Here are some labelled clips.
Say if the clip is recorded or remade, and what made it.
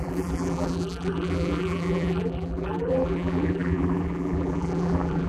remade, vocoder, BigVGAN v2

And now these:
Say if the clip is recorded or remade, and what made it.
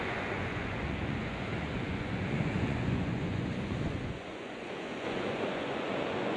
remade, vocoder, Vocos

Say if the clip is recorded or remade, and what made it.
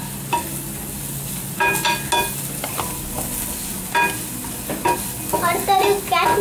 recorded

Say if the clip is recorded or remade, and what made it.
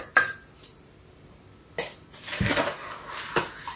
recorded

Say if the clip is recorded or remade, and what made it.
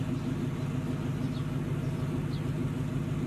recorded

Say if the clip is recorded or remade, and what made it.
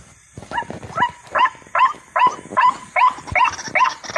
recorded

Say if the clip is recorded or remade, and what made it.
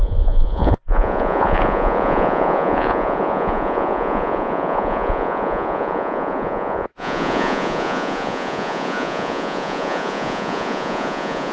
remade, vocoder, Vocos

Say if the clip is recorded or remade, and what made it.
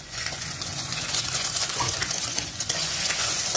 remade, vocoder, Vocos